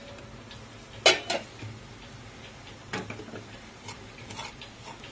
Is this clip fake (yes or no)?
no